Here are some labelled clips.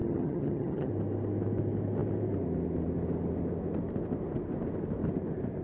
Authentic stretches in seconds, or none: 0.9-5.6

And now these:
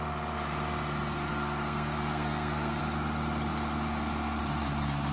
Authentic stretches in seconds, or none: 0.0-1.3; 2.8-5.1

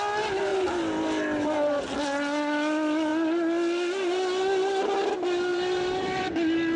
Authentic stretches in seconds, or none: 0.0-5.5; 6.3-6.8

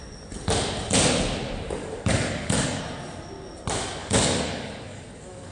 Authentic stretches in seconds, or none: 0.0-1.8; 2.8-4.0